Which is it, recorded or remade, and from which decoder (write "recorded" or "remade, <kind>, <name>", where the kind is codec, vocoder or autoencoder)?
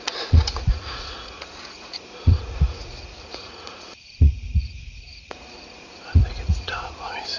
remade, vocoder, Vocos